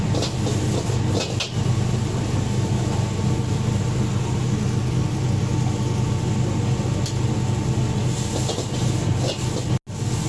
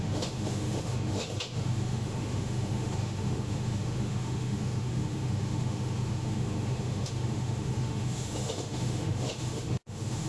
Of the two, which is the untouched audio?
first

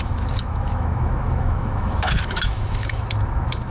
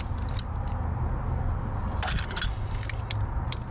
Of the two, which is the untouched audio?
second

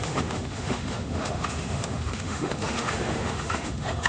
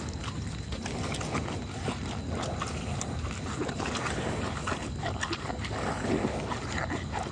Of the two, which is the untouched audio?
second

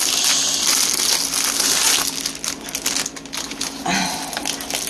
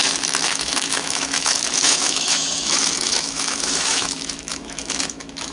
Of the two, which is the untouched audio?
first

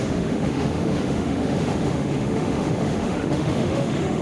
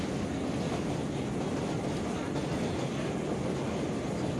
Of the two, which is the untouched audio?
second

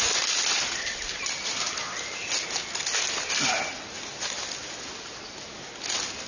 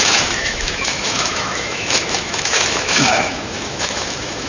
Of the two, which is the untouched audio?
first